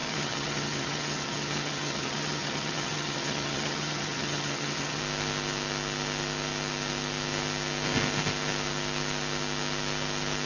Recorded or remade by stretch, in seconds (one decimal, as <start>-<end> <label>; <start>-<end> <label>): 0.0-5.0 remade; 5.0-10.5 recorded

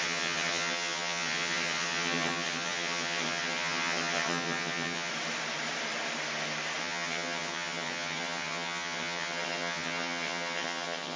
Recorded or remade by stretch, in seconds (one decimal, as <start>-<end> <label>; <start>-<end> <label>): 0.0-5.1 remade; 5.1-6.8 recorded; 6.8-11.2 remade

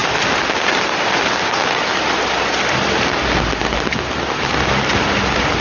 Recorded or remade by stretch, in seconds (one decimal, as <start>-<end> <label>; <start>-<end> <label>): 0.0-5.6 recorded